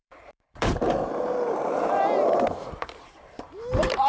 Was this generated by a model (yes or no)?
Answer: yes